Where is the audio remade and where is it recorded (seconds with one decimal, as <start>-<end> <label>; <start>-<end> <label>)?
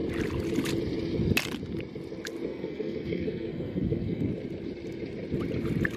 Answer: 0.0-2.5 recorded; 2.5-4.3 remade; 4.3-6.0 recorded